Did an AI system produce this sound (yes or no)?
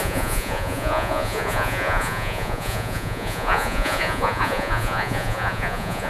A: yes